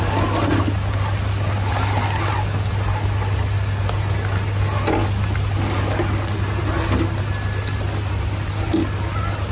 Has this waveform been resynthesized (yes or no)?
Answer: no